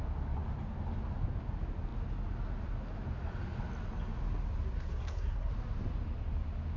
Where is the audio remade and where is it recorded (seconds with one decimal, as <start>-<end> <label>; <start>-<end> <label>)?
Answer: 0.0-4.7 recorded; 4.7-5.5 remade; 5.5-6.8 recorded

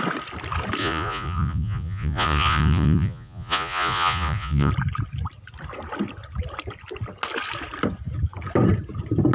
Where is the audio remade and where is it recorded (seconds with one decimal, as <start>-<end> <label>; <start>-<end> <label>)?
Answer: 0.0-0.8 recorded; 0.8-4.7 remade; 4.7-9.3 recorded

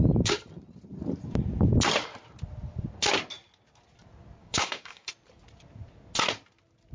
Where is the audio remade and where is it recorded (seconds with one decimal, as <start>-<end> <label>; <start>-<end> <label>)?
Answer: 0.0-4.4 recorded; 4.4-5.1 remade; 5.1-6.9 recorded

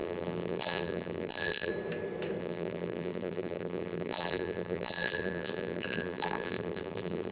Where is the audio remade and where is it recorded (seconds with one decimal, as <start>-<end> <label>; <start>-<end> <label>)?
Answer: 0.0-1.7 remade; 1.7-2.4 recorded; 2.4-7.3 remade